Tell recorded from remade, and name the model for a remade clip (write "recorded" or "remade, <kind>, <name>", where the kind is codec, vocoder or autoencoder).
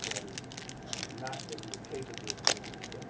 recorded